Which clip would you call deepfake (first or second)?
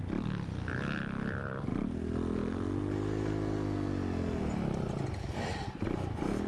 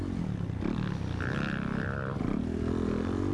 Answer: second